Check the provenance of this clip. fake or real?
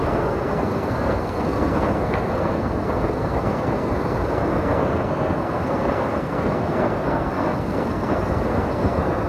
fake